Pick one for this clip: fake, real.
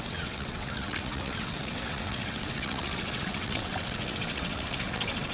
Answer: fake